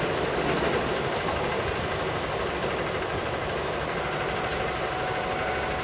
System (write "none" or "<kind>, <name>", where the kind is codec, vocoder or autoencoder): none